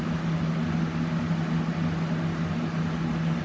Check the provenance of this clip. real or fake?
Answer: real